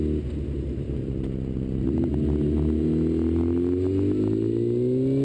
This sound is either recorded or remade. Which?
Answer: recorded